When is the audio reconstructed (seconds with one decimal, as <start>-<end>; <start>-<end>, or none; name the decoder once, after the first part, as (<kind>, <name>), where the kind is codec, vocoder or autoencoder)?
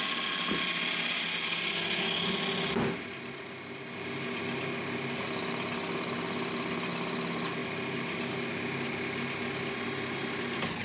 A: none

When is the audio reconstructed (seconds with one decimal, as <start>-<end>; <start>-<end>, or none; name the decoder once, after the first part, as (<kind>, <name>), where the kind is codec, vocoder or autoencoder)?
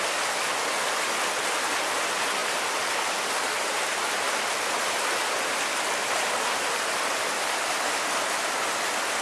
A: none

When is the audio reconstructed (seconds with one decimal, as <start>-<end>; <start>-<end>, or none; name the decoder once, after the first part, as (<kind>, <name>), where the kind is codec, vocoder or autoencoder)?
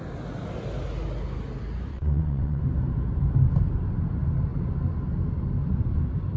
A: 1.9-2.6 (vocoder, WaveNeXt)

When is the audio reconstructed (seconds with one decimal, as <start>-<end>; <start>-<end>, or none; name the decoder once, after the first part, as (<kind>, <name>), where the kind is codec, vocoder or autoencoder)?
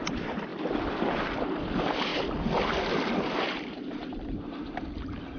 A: none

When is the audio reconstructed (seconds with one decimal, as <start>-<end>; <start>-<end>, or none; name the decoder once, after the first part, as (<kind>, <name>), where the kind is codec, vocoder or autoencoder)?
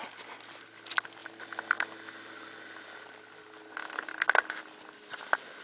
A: none